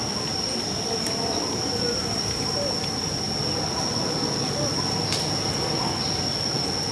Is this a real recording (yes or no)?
yes